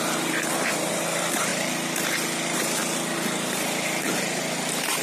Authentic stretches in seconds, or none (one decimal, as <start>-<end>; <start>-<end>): 1.5-4.2